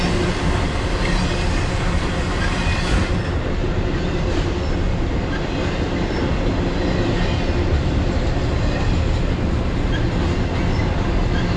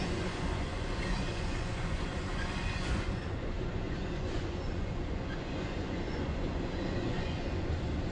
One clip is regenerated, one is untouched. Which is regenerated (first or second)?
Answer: second